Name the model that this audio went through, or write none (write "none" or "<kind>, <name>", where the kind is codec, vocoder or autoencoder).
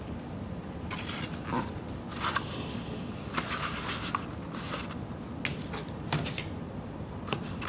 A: none